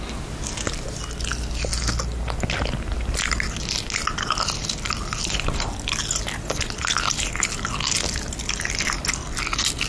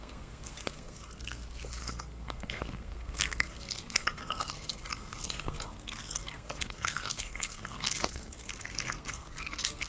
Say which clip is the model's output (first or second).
second